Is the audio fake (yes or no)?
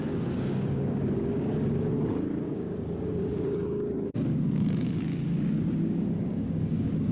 yes